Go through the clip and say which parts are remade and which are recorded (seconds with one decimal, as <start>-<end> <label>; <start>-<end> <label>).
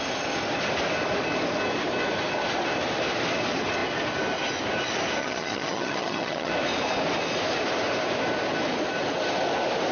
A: 0.0-5.2 recorded; 5.2-6.5 remade; 6.5-9.9 recorded